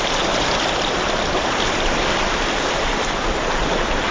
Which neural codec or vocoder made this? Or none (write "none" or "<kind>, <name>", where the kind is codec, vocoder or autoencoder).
vocoder, BigVGAN v2